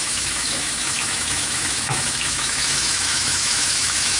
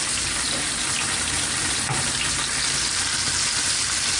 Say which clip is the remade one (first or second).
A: first